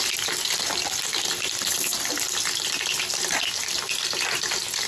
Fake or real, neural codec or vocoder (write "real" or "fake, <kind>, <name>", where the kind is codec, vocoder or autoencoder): real